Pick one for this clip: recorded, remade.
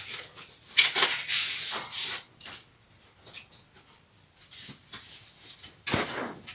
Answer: recorded